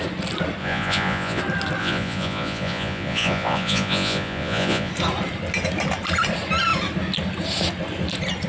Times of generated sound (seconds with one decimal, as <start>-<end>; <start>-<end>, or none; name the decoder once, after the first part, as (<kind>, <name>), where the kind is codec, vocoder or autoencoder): 0.6-1.4 (vocoder, Vocos); 1.8-4.9